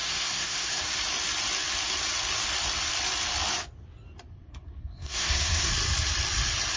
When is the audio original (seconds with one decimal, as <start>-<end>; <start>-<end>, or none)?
0.8-4.3; 5.7-6.8

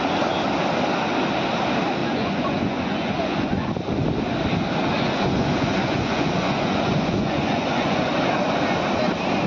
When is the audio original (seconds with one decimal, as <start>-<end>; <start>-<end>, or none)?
0.0-2.0; 3.7-4.8; 8.1-9.5

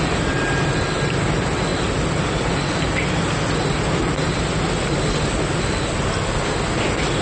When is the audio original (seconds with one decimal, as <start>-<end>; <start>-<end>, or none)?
0.0-7.2

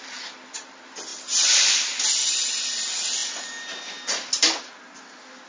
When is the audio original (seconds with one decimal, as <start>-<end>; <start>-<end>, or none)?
0.0-5.5

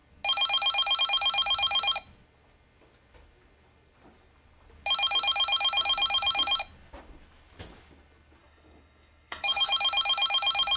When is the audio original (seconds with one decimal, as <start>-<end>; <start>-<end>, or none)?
0.0-8.4; 9.7-10.8

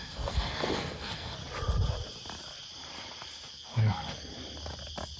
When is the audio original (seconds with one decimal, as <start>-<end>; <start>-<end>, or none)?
1.4-3.5; 4.3-5.2

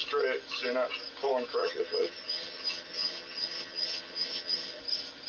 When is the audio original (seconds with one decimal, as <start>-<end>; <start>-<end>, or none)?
0.0-1.6; 4.8-5.3

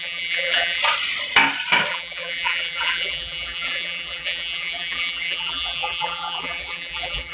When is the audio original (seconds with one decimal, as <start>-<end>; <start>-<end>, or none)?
0.8-1.9